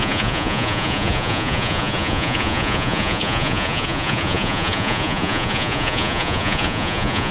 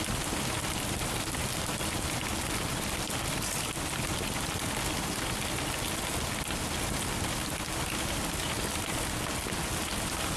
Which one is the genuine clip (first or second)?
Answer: second